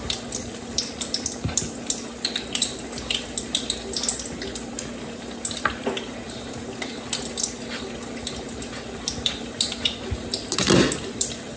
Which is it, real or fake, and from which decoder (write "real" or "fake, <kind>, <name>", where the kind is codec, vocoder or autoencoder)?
real